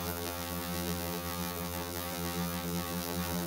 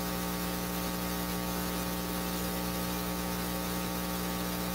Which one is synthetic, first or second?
first